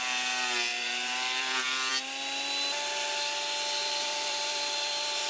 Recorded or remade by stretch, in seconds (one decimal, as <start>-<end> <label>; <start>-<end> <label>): 0.0-0.7 recorded; 0.7-1.9 remade; 1.9-3.8 recorded; 3.8-5.3 remade